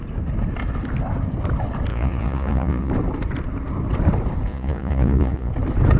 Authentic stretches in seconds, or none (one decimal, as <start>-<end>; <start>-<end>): 0.0-1.9; 2.9-4.5; 5.5-6.0

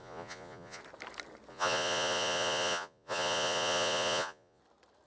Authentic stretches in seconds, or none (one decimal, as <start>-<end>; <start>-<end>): 0.8-1.5; 4.6-5.1